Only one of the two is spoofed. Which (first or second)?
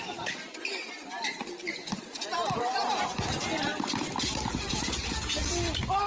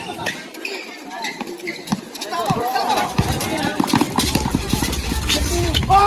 second